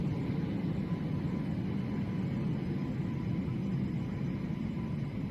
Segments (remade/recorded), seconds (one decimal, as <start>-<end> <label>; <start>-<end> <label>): 0.0-5.3 recorded